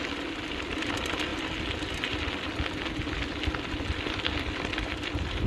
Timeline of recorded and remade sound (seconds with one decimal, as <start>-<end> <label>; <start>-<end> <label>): 0.0-5.5 recorded